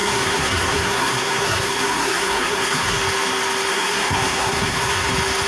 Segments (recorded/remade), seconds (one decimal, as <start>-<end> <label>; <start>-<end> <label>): 0.0-3.0 remade; 3.0-3.7 recorded; 3.7-5.1 remade; 5.1-5.5 recorded